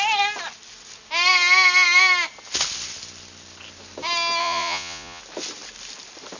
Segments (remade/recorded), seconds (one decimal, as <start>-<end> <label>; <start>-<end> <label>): 0.0-4.4 recorded; 4.4-5.2 remade; 5.2-6.4 recorded